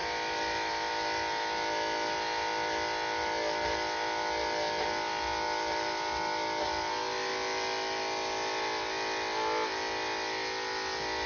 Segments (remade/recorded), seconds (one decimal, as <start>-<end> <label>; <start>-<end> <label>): 0.0-11.3 recorded